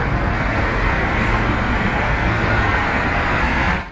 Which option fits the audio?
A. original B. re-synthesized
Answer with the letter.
B